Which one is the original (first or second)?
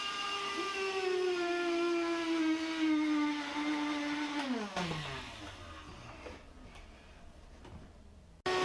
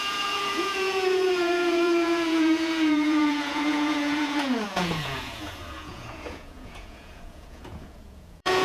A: first